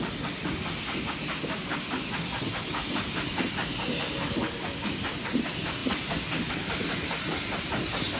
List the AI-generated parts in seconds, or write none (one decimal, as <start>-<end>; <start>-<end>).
4.4-5.3